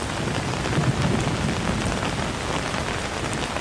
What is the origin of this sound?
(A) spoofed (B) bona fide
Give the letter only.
B